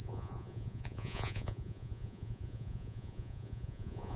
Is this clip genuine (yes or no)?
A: no